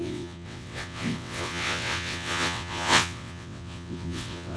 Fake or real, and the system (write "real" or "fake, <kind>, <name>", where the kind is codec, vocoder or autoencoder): fake, vocoder, WaveNeXt